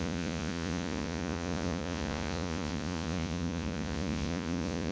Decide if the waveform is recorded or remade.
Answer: remade